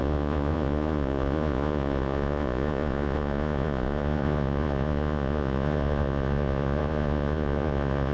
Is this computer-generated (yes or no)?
yes